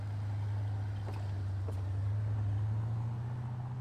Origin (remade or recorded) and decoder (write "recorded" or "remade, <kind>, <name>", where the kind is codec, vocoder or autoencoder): recorded